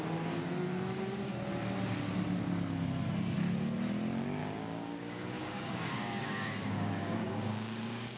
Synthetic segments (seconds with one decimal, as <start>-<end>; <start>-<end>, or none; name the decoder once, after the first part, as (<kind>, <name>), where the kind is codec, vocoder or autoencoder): 4.4-8.2 (codec, DAC)

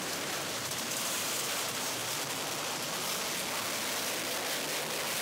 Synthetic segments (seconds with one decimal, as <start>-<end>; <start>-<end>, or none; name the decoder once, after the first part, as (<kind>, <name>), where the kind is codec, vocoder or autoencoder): 0.0-2.0 (vocoder, BigVGAN v2)

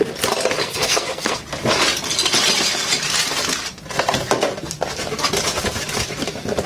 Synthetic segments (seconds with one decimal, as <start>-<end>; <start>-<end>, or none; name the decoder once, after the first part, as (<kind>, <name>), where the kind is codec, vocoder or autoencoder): 0.6-1.4 (codec, SNAC)

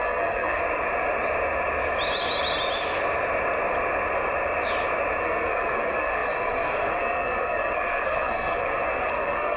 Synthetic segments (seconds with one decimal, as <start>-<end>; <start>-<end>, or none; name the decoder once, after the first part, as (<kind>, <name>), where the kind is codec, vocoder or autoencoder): 0.0-0.6 (codec, SNAC); 5.2-9.6

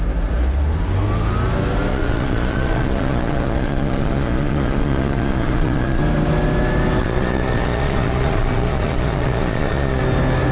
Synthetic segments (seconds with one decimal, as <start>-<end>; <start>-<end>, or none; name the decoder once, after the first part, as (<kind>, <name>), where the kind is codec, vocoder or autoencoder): 1.9-6.0 (vocoder, Vocos); 7.0-10.0

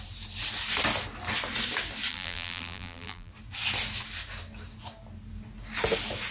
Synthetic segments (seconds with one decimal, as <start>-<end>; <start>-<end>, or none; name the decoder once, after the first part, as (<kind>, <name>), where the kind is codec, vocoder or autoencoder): 2.1-3.3 (vocoder, BigVGAN v2)

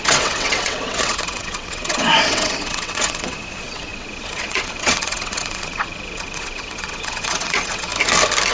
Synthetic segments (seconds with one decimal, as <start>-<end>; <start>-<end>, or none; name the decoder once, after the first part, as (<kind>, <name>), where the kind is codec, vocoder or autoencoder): 0.0-7.9 (vocoder, WaveNeXt)

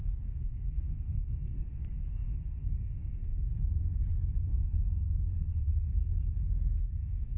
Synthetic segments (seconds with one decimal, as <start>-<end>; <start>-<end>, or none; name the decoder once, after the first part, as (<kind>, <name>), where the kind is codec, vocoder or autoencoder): 0.0-3.3 (codec, SNAC); 4.5-6.0; 6.5-7.4